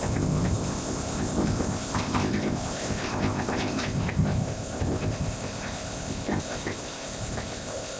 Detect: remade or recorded remade